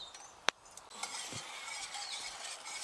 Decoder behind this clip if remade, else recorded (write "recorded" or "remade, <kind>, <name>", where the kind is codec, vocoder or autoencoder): recorded